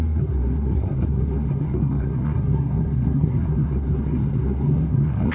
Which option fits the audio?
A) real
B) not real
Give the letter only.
B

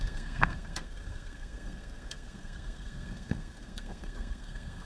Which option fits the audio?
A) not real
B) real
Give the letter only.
A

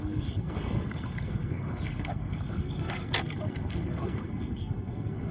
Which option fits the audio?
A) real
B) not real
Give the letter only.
B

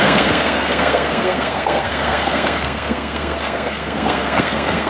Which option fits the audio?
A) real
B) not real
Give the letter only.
B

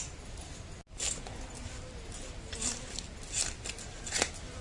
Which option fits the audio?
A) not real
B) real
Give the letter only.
B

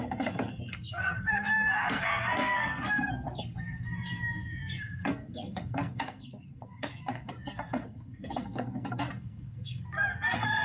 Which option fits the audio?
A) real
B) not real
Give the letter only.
B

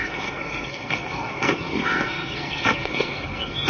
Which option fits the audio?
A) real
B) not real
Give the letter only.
B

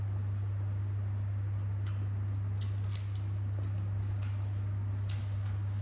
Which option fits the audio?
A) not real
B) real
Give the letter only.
B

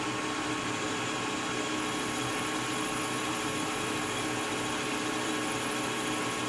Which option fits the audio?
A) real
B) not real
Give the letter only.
A